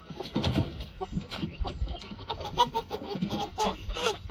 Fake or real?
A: fake